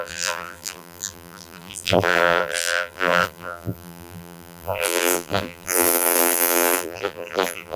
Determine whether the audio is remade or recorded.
remade